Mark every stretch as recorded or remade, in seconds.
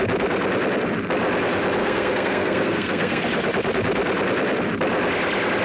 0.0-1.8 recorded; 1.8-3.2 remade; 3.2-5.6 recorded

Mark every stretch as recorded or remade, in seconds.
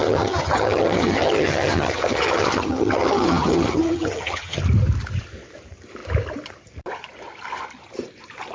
0.0-4.6 remade; 4.6-8.5 recorded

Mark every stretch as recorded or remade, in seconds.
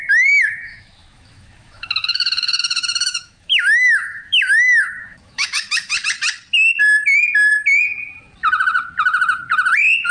0.0-5.9 remade; 5.9-10.1 recorded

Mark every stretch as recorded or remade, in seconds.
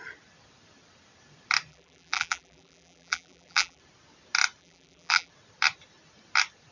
0.0-1.7 recorded; 1.7-3.8 remade; 3.8-4.6 recorded; 4.6-5.3 remade; 5.3-6.7 recorded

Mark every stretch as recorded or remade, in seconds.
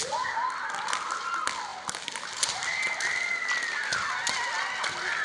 0.0-5.2 recorded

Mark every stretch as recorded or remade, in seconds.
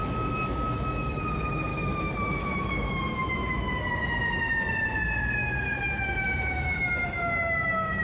0.0-1.2 remade; 1.2-1.7 recorded; 1.7-3.8 remade; 3.8-5.4 recorded; 5.4-8.0 remade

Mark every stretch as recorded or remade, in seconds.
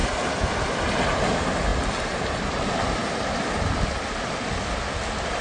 0.0-3.0 recorded; 3.0-4.7 remade; 4.7-5.4 recorded